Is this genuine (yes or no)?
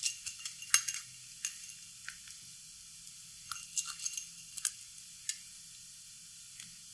yes